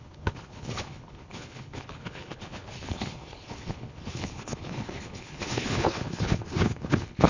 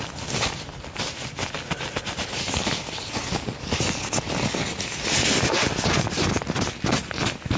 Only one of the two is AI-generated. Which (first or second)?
first